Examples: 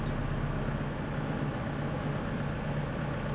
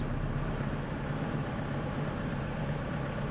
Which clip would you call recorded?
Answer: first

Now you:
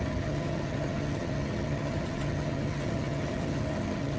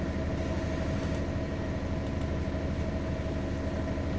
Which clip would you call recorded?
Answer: second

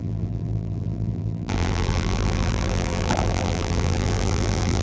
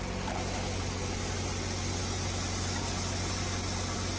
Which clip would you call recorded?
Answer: second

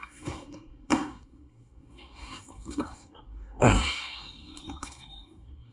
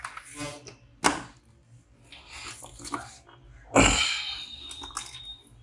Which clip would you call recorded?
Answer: second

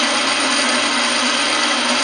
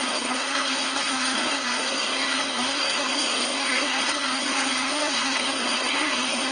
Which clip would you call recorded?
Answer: first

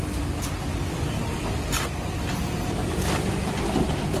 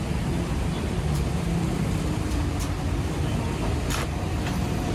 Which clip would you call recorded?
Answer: first